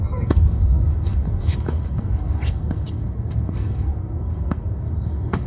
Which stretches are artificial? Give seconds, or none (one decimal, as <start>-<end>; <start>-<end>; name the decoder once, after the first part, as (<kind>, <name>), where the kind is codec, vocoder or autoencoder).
0.0-5.5 (codec, SNAC)